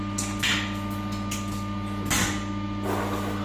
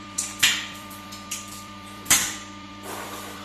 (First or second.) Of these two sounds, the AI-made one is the second